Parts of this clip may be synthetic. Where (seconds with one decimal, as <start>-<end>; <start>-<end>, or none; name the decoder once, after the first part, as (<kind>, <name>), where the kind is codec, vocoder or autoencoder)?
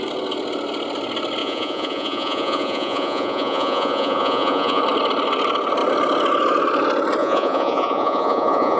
1.4-4.8 (vocoder, Vocos); 7.2-8.8